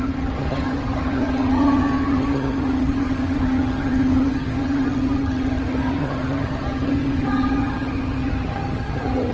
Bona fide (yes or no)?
no